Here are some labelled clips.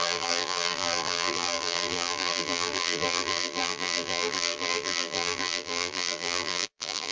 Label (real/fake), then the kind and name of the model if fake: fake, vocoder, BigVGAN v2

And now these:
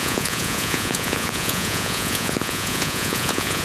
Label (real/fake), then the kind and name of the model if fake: fake, vocoder, Vocos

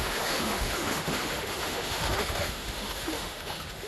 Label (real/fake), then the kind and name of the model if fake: fake, autoencoder, DAC-VAE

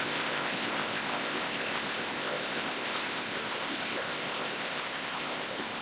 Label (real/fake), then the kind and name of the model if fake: fake, codec, ZipCodec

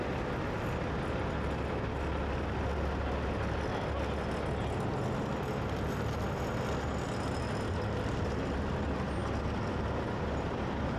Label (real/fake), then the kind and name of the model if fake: real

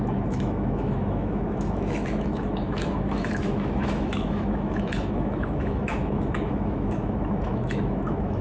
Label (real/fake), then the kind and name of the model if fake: fake, autoencoder, DAC-VAE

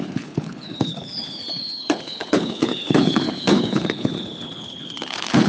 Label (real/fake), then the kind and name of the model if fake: fake, codec, HILCodec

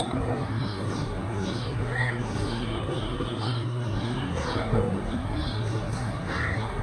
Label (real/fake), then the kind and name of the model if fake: fake, codec, SNAC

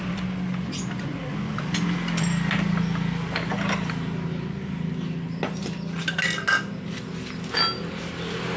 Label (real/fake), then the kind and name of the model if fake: real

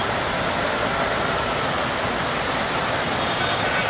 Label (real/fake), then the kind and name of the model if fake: real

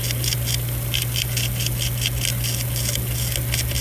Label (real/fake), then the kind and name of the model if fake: real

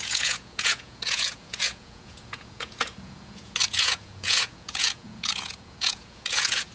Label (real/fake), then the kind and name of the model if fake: fake, vocoder, Vocos